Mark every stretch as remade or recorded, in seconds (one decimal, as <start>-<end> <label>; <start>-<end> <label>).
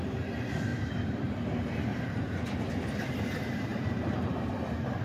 0.0-0.7 recorded; 0.7-1.3 remade; 1.3-1.9 recorded; 1.9-2.6 remade; 2.6-3.7 recorded; 3.7-4.5 remade; 4.5-5.0 recorded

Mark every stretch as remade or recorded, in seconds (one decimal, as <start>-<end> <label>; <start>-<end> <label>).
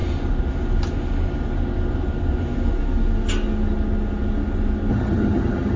0.0-4.9 recorded; 4.9-5.8 remade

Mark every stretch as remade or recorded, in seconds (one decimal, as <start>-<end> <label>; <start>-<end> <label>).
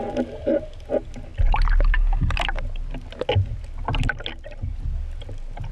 0.0-5.7 recorded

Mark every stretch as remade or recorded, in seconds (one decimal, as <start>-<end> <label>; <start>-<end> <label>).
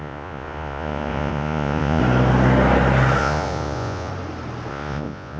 0.0-2.0 remade; 2.0-3.2 recorded; 3.2-4.1 remade; 4.1-4.7 recorded; 4.7-5.4 remade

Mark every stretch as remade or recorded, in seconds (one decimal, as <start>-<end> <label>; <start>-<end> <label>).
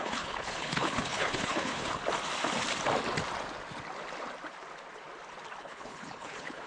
0.0-1.9 remade; 1.9-5.6 recorded; 5.6-6.7 remade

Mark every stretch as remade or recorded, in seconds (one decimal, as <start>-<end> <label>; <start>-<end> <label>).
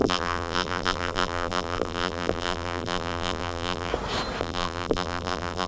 0.0-3.9 remade; 3.9-4.4 recorded; 4.4-5.7 remade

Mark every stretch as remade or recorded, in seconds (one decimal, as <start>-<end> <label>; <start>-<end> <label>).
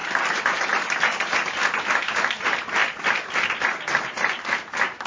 0.0-0.6 remade; 0.6-5.1 recorded